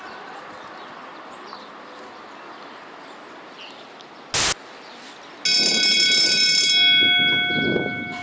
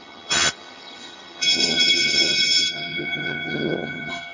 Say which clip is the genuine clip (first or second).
first